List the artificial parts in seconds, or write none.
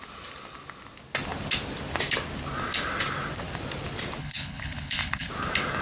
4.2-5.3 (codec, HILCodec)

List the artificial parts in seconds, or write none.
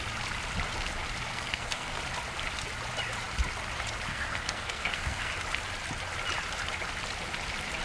1.3-2.0 (codec, SNAC); 4.1-5.3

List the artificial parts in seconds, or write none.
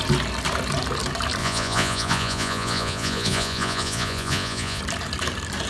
1.4-4.8 (vocoder, Vocos)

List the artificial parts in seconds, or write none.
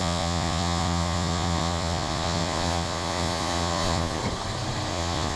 0.0-4.2 (vocoder, Vocos); 4.9-5.4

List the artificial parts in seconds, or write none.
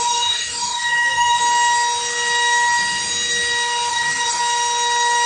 0.0-1.4 (codec, DAC); 3.9-4.4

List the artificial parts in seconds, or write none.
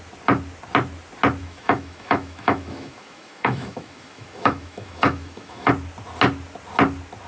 1.4-5.7 (autoencoder, DAC-VAE)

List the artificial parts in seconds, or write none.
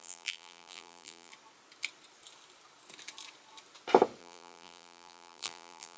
0.0-1.3 (vocoder, BigVGAN v2); 4.2-6.0